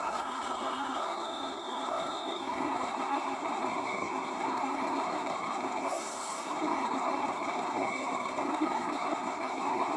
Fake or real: fake